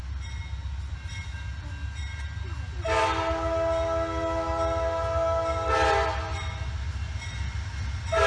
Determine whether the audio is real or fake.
real